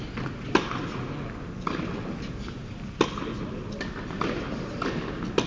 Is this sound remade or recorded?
recorded